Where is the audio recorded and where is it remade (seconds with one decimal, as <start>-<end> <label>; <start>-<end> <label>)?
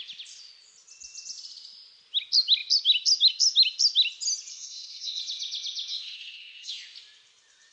0.0-4.5 recorded; 4.5-5.2 remade; 5.2-5.9 recorded; 5.9-6.7 remade; 6.7-7.7 recorded